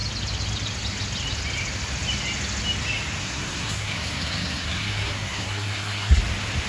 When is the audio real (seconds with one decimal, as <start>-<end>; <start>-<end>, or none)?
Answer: 0.0-3.2; 6.2-6.7